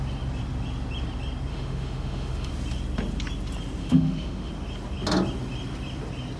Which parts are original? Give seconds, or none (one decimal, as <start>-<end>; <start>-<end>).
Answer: 0.0-1.5; 2.5-3.8; 4.5-6.4